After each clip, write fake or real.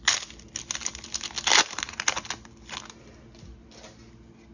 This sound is real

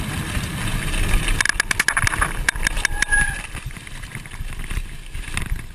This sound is real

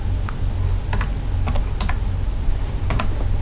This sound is real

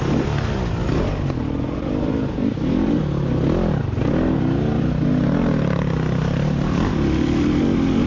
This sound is real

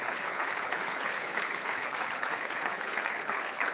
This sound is fake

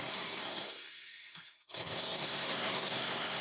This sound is fake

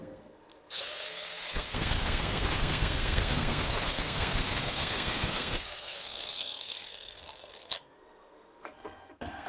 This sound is fake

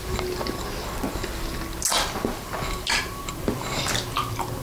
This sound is real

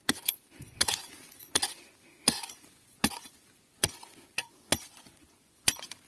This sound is fake